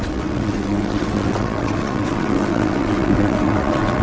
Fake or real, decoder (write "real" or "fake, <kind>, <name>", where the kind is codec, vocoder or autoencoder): fake, vocoder, WaveNeXt